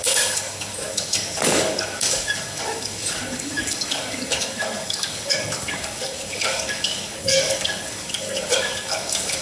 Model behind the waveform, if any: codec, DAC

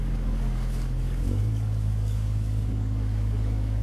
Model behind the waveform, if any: codec, DAC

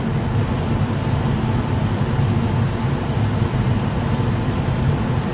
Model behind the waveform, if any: none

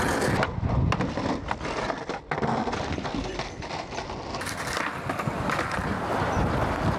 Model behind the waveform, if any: none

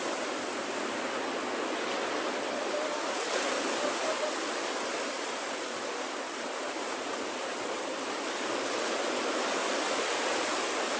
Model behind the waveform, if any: none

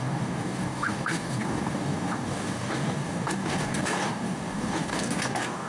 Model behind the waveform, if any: codec, DAC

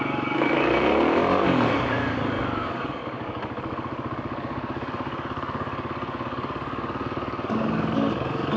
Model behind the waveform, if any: codec, DAC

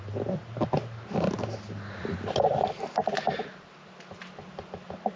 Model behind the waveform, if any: none